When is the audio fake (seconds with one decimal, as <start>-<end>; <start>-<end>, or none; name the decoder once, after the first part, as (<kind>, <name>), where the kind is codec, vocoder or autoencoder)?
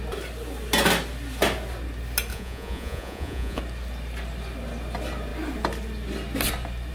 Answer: 2.3-3.6 (vocoder, Vocos)